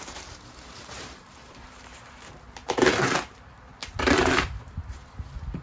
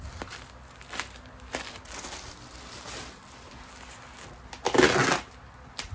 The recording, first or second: second